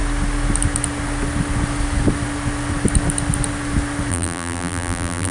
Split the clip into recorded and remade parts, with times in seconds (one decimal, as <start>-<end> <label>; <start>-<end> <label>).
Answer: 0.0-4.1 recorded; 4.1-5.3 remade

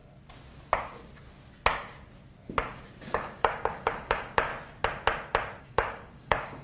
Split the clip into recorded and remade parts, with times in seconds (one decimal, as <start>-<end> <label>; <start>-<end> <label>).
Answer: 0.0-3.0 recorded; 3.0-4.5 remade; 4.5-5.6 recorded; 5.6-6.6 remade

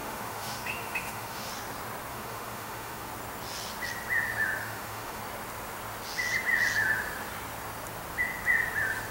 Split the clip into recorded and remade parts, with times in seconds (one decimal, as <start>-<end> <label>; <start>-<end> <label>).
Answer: 0.0-1.5 remade; 1.5-2.1 recorded; 2.1-3.1 remade; 3.1-4.6 recorded; 4.6-5.2 remade; 5.2-9.1 recorded

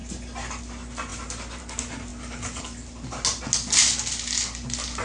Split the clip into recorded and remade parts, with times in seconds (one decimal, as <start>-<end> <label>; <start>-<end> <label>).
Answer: 0.0-5.0 recorded

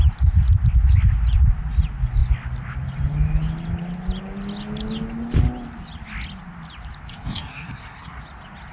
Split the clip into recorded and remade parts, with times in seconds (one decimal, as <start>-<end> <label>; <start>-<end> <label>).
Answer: 0.0-7.1 recorded; 7.1-8.2 remade; 8.2-8.7 recorded

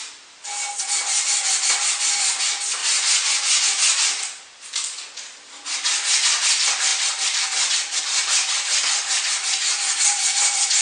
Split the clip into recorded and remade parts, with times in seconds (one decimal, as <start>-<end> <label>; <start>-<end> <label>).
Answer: 0.0-2.8 recorded; 2.8-3.6 remade; 3.6-10.8 recorded

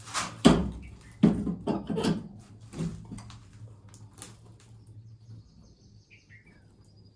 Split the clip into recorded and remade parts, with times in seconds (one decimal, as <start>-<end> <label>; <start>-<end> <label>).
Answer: 0.0-7.2 recorded

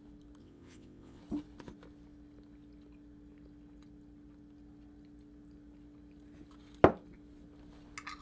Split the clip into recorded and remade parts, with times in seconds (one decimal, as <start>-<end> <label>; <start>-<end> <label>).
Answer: 0.0-0.4 recorded; 0.4-1.2 remade; 1.2-8.2 recorded